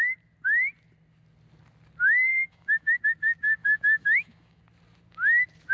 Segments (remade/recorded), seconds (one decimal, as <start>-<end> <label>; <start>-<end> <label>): 0.0-2.3 recorded; 2.3-3.0 remade; 3.0-3.6 recorded; 3.6-4.6 remade; 4.6-5.7 recorded